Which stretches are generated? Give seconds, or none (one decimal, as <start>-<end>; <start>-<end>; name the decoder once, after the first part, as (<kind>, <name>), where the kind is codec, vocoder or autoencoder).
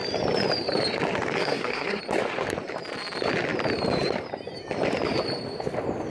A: 1.4-2.0 (codec, SNAC)